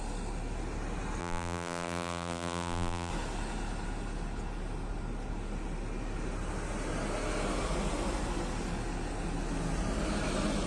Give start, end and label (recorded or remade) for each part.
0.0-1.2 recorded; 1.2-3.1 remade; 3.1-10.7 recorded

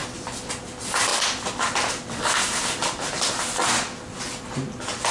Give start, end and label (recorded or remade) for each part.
0.0-1.1 recorded; 1.1-4.2 remade; 4.2-5.1 recorded

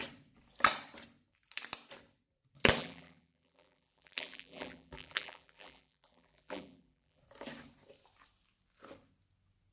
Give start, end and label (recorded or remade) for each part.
0.0-2.8 recorded; 2.8-7.2 remade; 7.2-9.7 recorded

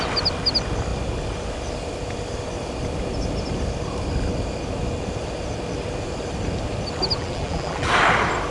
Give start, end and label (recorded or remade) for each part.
0.0-7.2 recorded; 7.2-7.9 remade; 7.9-8.5 recorded